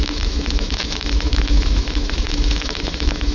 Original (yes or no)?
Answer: no